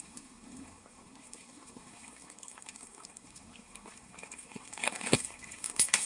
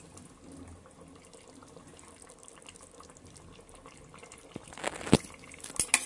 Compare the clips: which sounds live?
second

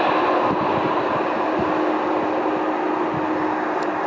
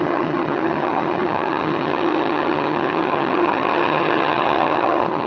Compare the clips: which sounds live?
first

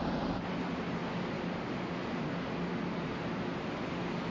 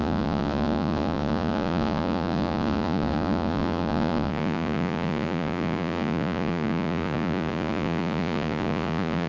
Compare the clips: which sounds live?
first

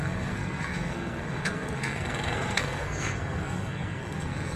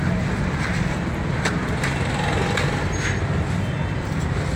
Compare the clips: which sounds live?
second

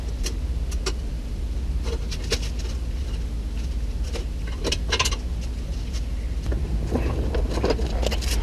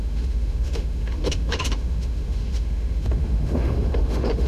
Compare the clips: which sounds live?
first